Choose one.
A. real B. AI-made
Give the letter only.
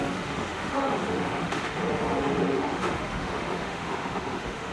B